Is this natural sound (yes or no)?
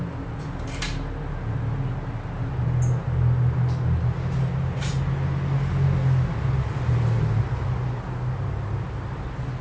yes